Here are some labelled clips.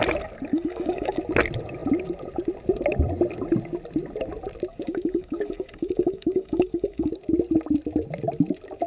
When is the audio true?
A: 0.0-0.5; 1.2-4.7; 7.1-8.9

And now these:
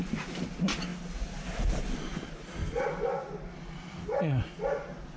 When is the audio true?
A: 0.0-5.2

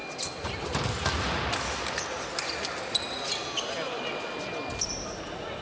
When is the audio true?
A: 0.0-5.6

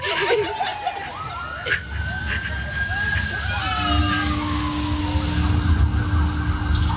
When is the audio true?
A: 0.0-4.0; 5.0-7.0

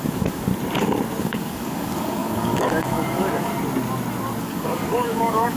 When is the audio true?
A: 0.5-1.2; 3.5-4.4

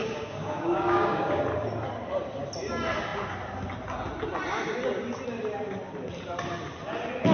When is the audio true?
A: 1.4-7.3

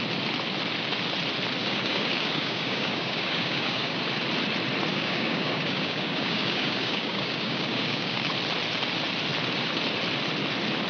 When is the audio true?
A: 0.0-1.6; 4.0-4.9; 8.3-10.9

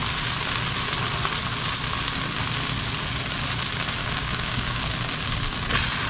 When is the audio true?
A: 0.0-4.0; 4.8-6.1